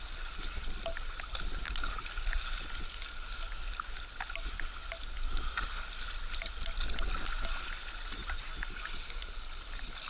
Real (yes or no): yes